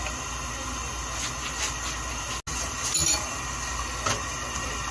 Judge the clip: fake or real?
real